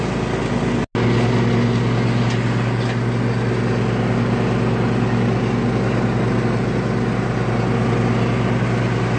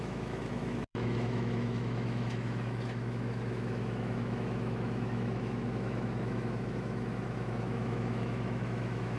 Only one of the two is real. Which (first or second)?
first